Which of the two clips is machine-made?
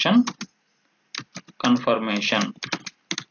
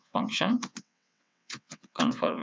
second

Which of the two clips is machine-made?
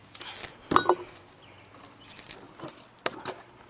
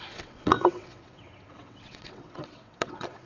second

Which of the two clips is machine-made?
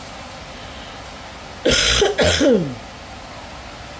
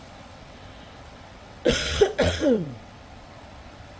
second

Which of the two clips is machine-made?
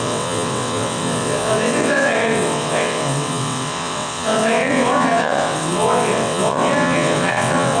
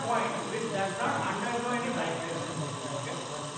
first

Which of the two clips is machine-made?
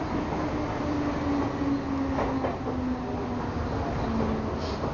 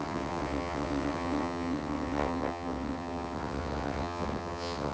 second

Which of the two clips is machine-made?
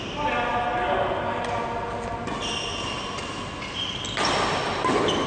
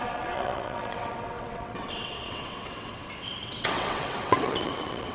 second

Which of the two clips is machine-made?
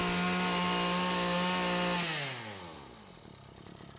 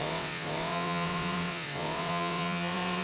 second